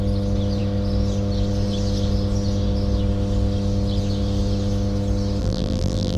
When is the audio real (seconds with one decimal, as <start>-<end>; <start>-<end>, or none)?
0.0-5.4